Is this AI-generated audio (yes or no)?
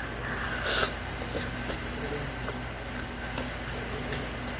no